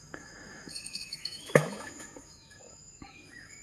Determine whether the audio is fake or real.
fake